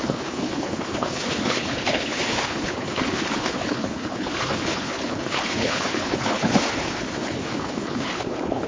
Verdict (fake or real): fake